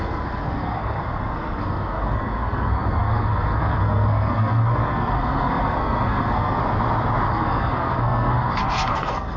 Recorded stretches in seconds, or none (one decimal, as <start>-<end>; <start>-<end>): 6.6-7.3